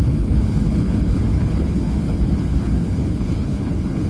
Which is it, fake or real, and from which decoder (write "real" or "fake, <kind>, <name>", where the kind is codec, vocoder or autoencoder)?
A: fake, codec, HILCodec